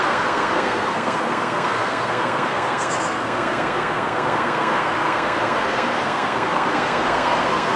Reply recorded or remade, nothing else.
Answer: remade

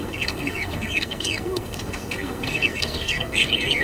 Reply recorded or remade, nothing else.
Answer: remade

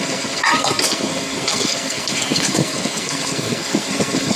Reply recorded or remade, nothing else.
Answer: remade